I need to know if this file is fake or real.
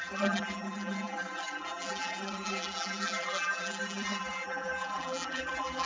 fake